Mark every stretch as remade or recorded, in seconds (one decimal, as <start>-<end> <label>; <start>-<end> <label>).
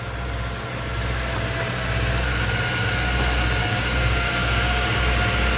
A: 0.0-3.6 recorded; 3.6-5.0 remade; 5.0-5.6 recorded